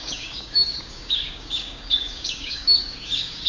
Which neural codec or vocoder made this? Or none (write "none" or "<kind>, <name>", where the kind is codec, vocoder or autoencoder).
codec, DAC